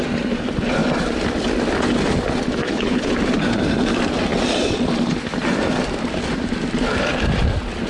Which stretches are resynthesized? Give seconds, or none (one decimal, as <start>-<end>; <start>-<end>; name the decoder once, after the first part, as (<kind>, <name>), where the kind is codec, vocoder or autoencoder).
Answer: 2.6-3.1 (codec, HILCodec)